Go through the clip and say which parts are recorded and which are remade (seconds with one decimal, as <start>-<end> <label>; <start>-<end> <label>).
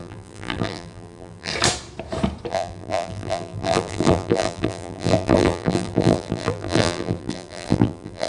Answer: 0.0-1.5 remade; 1.5-2.5 recorded; 2.5-8.3 remade